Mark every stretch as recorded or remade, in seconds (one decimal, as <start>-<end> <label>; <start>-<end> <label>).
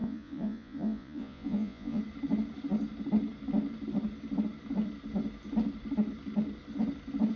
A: 0.0-2.0 remade; 2.0-7.4 recorded